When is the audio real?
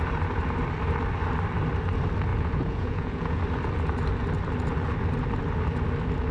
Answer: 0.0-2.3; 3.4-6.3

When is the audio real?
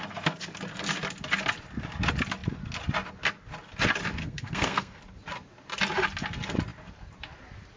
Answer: 0.0-4.2; 5.0-7.8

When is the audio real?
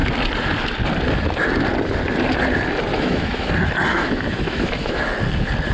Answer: 0.0-2.9; 3.5-3.9; 5.0-5.7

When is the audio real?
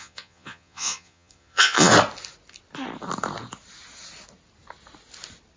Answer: 1.9-5.6